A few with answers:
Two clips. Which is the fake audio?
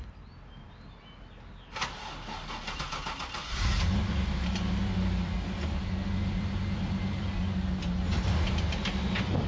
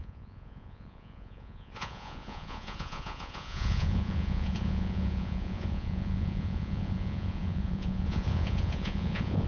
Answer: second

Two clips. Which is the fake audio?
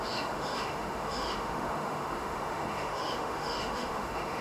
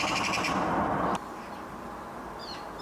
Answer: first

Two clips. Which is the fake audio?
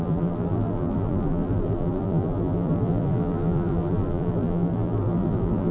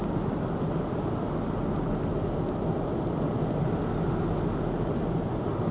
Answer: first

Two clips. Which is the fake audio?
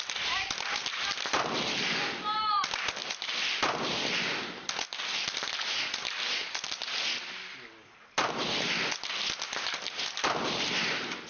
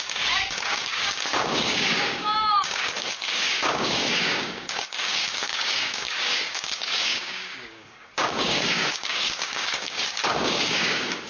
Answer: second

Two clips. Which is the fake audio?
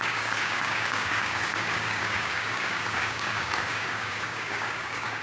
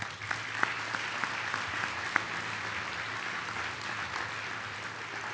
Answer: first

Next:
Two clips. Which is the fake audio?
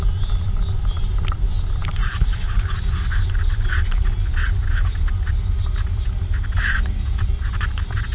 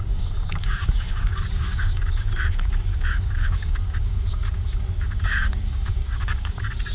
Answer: second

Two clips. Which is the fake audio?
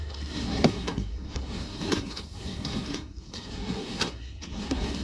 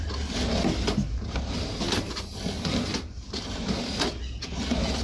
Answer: first